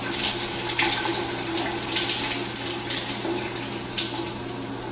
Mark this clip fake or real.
real